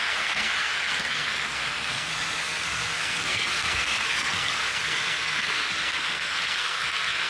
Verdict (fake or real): fake